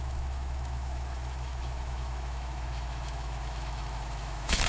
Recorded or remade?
remade